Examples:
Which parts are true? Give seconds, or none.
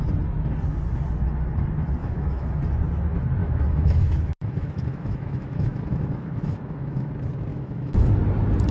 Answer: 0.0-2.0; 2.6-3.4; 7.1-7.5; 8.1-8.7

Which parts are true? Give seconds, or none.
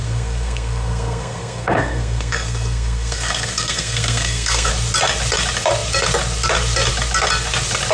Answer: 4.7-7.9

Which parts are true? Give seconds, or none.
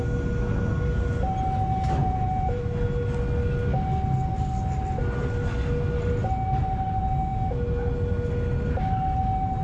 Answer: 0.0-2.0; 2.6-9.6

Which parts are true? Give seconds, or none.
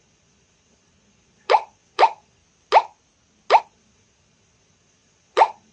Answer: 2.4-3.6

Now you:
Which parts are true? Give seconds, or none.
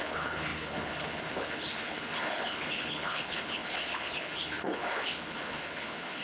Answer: none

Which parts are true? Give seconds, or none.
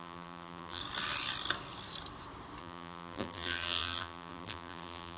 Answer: 0.8-2.6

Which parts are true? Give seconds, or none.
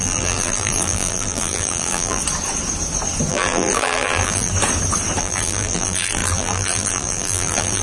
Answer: 2.2-3.3; 4.5-5.2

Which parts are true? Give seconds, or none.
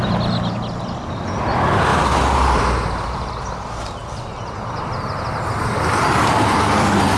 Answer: 0.0-1.9; 3.3-7.2